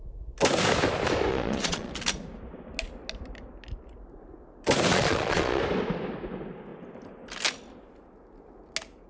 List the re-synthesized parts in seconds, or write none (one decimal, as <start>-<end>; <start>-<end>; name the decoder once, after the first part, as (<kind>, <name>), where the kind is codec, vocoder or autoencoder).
1.3-1.9 (vocoder, Vocos); 4.9-5.6